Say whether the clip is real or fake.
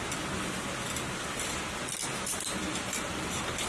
real